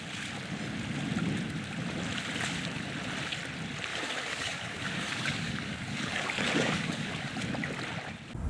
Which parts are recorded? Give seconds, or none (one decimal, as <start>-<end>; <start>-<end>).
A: 0.0-3.9; 7.3-8.5